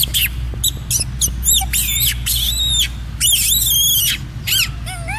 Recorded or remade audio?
recorded